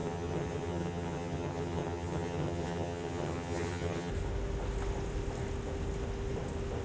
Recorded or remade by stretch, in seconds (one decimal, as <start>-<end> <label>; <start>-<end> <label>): 0.0-4.1 remade; 4.1-6.8 recorded